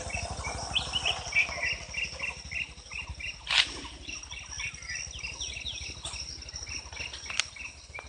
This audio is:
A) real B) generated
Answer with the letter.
A